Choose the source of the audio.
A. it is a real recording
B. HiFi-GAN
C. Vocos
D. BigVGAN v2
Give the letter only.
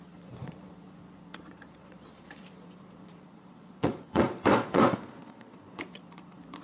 C